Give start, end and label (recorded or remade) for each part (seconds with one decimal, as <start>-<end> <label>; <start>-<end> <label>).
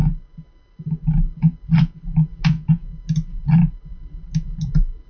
0.0-5.1 recorded